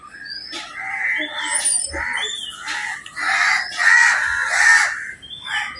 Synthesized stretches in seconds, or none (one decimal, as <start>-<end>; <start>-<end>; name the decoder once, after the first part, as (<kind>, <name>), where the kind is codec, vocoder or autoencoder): none